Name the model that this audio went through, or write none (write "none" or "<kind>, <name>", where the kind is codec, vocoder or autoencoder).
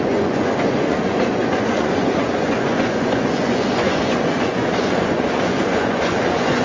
vocoder, Vocos